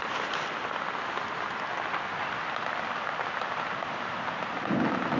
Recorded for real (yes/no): yes